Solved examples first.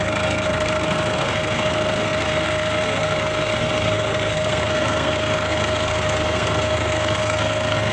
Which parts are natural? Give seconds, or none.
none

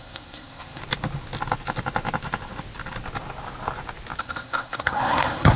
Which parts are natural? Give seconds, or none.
0.8-4.2

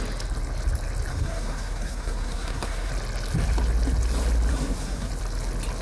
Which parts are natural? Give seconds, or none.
0.0-1.1; 2.9-4.5; 5.1-5.8

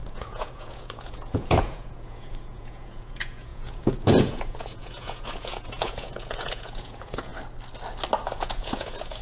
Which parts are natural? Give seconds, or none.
7.3-8.3

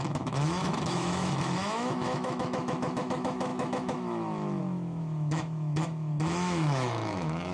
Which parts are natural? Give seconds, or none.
none

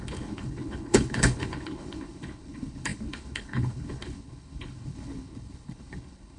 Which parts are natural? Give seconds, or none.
none